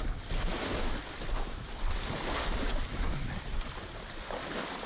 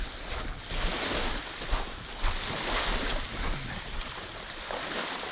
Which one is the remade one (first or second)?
first